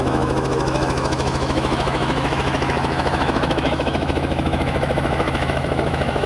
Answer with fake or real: fake